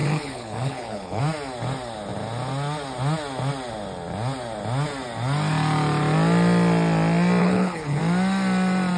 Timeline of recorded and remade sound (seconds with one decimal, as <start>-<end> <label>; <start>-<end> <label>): 0.0-1.2 remade; 1.2-7.4 recorded; 7.4-8.0 remade; 8.0-9.0 recorded